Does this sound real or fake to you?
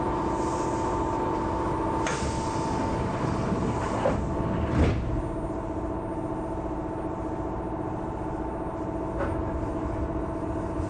real